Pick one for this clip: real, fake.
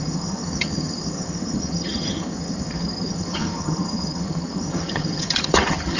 fake